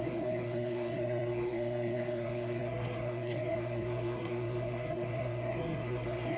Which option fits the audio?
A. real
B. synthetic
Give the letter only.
B